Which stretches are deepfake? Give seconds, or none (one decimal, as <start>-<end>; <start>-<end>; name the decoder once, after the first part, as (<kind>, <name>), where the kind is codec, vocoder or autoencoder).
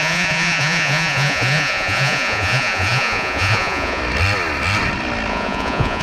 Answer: 0.0-4.0 (vocoder, Vocos); 5.3-6.0